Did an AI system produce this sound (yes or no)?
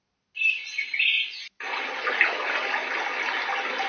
no